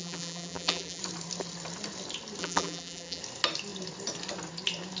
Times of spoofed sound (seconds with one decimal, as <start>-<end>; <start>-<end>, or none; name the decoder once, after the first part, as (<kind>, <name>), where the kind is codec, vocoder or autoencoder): 0.0-1.0 (vocoder, BigVGAN v2); 2.4-3.2